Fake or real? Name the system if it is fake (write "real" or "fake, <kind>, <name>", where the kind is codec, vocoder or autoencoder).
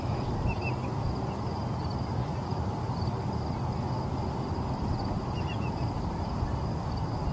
real